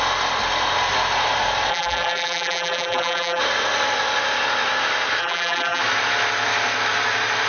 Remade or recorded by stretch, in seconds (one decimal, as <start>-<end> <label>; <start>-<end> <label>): 0.0-1.7 recorded; 1.7-3.4 remade; 3.4-5.2 recorded; 5.2-5.8 remade; 5.8-7.5 recorded